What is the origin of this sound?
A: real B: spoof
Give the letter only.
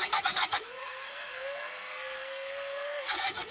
B